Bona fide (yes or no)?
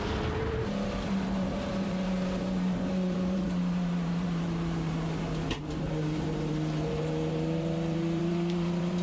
no